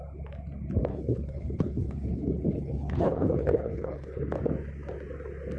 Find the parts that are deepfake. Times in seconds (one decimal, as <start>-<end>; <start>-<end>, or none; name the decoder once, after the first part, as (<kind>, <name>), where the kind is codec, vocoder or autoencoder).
0.9-4.3 (codec, HILCodec)